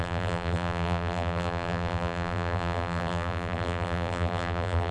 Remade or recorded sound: remade